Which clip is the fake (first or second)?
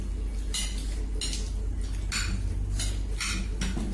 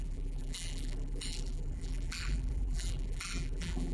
second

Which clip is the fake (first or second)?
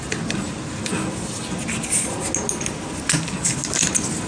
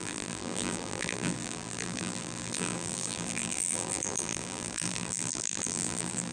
second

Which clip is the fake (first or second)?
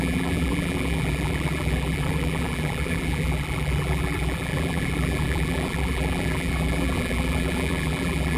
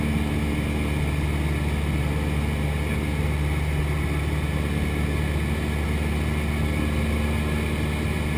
first